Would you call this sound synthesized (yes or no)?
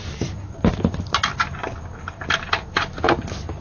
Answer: no